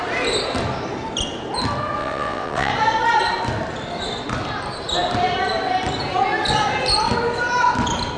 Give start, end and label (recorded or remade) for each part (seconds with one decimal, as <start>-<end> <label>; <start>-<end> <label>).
0.0-2.0 recorded; 2.0-2.7 remade; 2.7-8.2 recorded